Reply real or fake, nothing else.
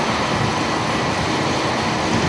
real